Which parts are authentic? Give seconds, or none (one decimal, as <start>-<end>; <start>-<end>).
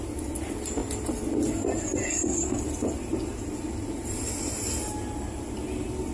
0.0-6.1